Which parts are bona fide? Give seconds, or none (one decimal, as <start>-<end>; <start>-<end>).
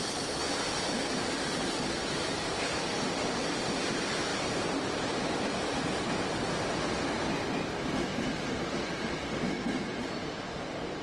0.0-0.4; 2.8-4.3; 7.3-8.1; 10.5-11.0